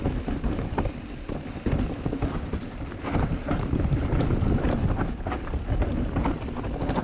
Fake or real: real